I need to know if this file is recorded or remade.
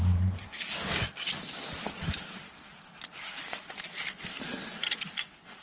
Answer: recorded